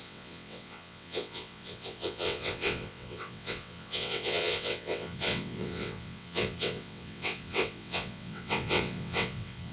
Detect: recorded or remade remade